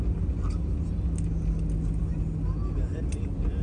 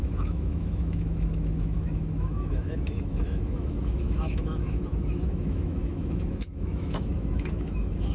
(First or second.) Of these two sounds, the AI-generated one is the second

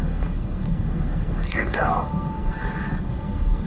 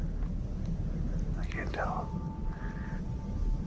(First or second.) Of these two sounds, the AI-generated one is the first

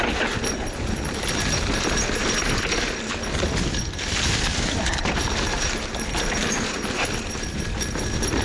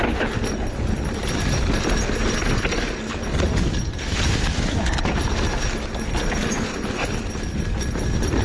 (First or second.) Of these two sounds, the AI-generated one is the first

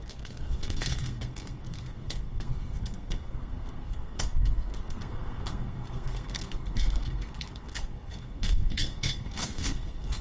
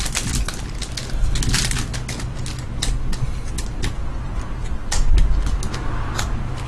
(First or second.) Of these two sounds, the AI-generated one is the first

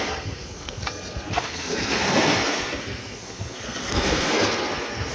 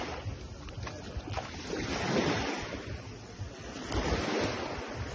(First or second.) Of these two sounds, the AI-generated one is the first